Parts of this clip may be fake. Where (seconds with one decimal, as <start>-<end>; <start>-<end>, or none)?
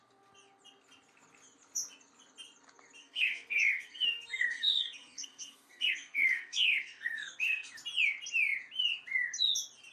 3.0-7.7